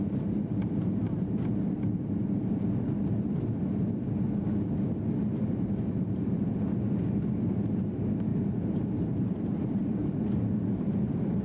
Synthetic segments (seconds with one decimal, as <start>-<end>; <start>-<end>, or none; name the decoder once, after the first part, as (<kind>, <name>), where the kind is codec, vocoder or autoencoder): 8.3-11.4 (vocoder, BigVGAN v2)